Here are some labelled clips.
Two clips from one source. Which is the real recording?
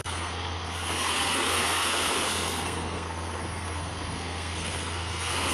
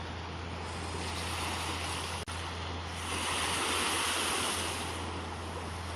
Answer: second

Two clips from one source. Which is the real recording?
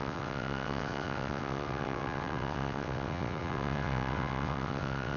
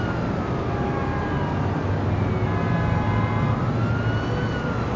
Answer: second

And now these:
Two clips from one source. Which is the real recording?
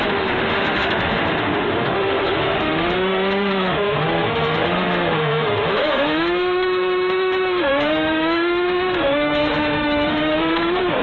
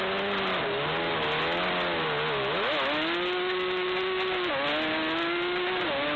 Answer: second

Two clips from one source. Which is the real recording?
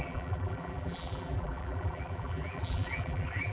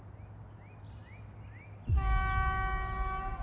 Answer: second